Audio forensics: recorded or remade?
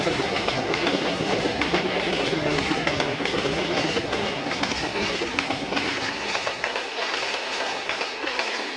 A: remade